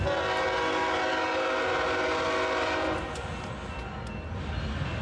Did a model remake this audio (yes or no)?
no